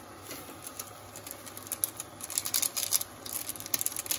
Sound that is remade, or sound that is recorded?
recorded